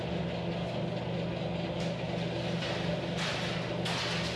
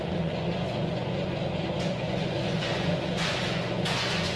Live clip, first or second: first